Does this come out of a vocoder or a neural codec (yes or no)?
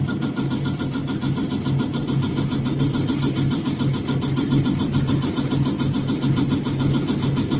no